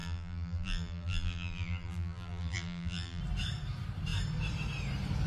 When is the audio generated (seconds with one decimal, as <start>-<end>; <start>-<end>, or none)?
0.0-3.2